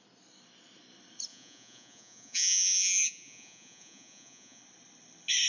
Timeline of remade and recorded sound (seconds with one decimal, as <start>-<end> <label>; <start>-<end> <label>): 0.0-1.3 recorded; 1.3-4.6 remade; 4.6-5.5 recorded